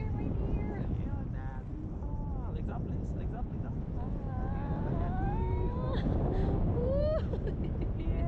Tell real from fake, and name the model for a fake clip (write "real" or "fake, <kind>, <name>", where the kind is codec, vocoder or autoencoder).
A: real